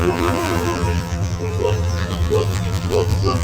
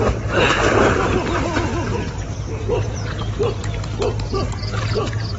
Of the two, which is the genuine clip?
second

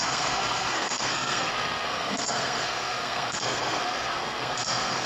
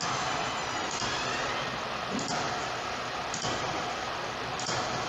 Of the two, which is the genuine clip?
second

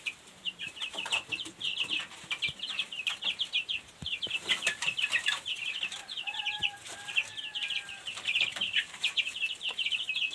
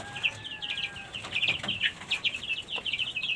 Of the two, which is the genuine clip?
second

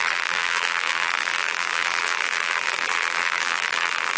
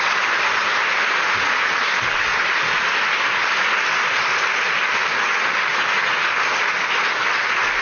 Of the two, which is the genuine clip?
second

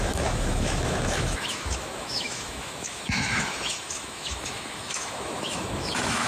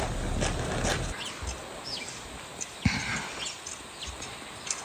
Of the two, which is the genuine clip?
second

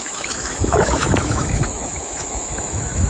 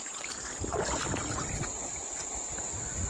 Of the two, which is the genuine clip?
second